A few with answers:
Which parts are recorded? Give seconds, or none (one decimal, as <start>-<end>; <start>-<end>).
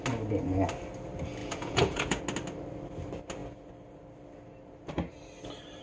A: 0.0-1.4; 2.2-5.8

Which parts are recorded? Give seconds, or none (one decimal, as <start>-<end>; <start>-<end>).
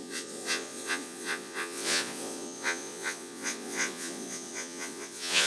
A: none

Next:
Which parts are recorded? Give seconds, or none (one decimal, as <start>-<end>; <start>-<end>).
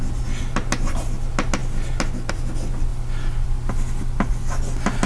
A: 0.0-5.1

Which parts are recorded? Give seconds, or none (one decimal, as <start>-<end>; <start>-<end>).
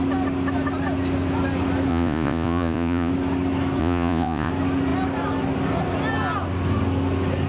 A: 0.0-1.9; 3.1-3.8; 4.5-7.5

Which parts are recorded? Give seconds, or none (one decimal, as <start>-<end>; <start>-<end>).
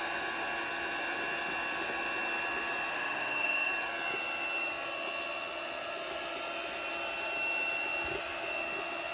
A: 0.0-2.9; 3.7-9.1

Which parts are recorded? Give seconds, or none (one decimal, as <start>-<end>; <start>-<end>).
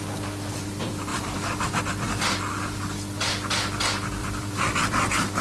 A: 0.0-1.1; 1.8-4.2; 5.0-5.4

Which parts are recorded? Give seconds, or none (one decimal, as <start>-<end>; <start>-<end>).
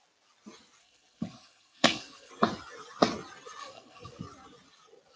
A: 0.0-0.8; 2.3-3.6; 4.2-5.2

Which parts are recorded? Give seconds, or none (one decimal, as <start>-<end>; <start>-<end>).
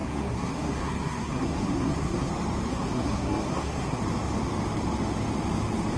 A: 2.3-2.7; 4.0-6.0